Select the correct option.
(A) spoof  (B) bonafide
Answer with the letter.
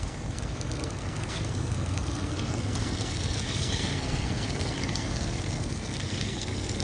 A